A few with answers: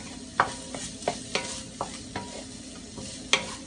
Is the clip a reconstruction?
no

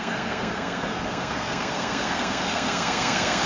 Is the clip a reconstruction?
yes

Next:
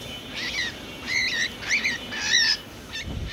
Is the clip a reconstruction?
no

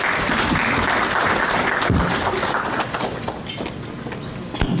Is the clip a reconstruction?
no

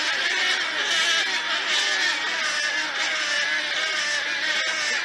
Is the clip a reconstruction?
no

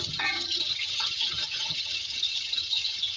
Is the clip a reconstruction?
yes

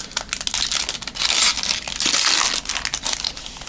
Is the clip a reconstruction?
no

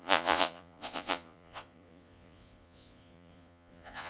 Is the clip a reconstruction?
yes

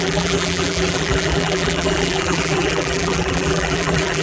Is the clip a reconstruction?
yes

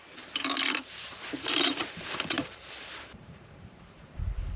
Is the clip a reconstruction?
yes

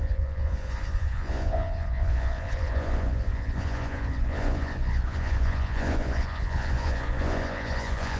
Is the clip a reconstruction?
yes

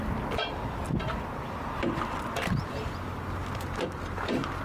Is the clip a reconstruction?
yes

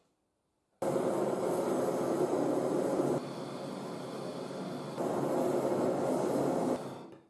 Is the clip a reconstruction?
no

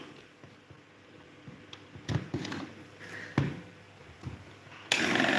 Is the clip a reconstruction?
no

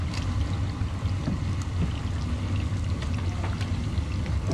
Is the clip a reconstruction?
no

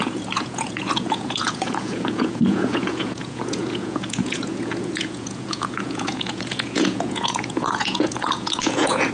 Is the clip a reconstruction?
yes